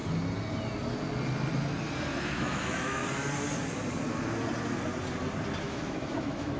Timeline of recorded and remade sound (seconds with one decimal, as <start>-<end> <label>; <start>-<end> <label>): 0.0-2.2 recorded; 2.2-3.0 remade; 3.0-5.6 recorded; 5.6-6.6 remade